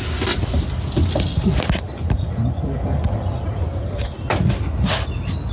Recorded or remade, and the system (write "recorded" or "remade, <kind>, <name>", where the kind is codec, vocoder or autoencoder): recorded